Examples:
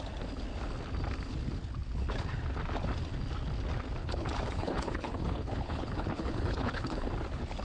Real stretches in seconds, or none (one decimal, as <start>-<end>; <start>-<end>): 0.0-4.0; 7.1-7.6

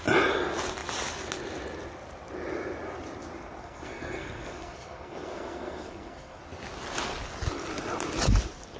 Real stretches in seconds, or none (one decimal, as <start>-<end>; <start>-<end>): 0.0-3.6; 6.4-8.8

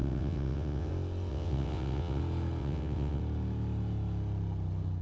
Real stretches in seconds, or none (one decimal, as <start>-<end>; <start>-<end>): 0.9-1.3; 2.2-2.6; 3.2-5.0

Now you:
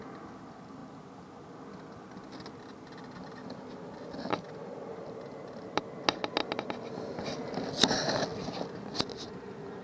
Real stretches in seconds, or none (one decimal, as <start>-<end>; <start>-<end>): 0.0-9.8